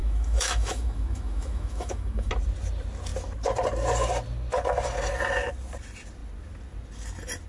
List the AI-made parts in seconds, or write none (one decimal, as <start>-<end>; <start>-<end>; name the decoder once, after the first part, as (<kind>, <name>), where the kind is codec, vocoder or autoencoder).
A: 0.0-2.3 (autoencoder, DAC-VAE)